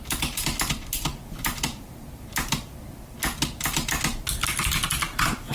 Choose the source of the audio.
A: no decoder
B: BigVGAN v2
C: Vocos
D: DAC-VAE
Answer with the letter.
A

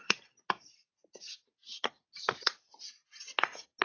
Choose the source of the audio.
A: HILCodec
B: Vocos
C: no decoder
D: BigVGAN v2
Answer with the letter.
C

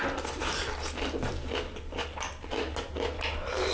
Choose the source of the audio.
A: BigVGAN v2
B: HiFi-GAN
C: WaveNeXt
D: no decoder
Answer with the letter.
D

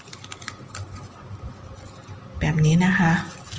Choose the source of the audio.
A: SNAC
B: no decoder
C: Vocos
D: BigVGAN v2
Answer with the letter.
B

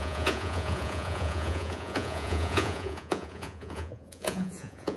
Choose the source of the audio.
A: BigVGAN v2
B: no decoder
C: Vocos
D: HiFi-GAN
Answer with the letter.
C